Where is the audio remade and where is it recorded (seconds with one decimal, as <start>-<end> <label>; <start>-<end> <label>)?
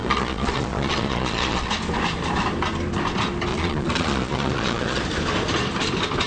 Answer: 0.0-1.7 remade; 1.7-3.5 recorded; 3.5-5.0 remade; 5.0-6.3 recorded